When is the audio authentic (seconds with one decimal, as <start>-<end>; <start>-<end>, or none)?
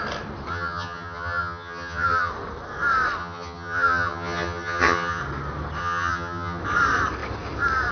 0.0-0.5; 2.3-3.2; 5.2-5.8; 6.6-7.9